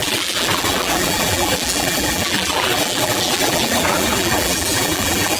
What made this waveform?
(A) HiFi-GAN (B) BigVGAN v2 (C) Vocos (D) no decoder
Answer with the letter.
B